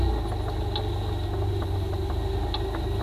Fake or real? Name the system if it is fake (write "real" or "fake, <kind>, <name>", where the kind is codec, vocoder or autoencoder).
real